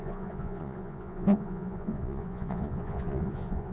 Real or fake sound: fake